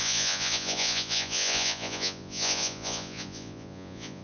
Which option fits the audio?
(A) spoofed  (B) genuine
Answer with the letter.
A